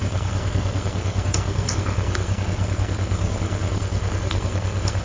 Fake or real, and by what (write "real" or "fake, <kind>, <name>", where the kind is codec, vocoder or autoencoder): fake, codec, SNAC